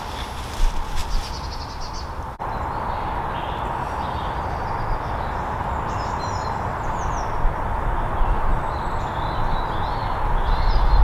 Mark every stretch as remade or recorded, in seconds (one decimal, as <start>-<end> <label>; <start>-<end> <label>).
0.0-11.0 recorded

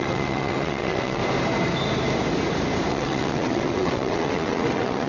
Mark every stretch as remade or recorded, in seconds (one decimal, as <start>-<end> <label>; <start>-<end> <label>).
0.0-1.2 remade; 1.2-2.9 recorded; 2.9-5.1 remade